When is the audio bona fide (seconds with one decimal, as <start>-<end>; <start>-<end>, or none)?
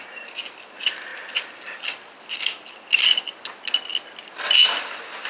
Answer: 0.0-5.3